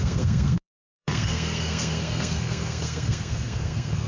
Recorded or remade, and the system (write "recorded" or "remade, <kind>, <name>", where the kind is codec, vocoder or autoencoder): remade, codec, SNAC